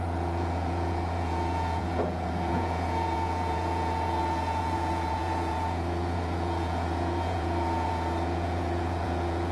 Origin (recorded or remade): remade